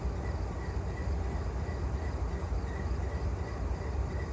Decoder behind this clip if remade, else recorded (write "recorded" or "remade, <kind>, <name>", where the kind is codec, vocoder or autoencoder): recorded